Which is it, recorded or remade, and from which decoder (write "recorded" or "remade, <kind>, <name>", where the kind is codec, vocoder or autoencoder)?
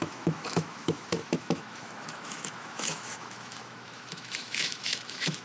remade, autoencoder, DAC-VAE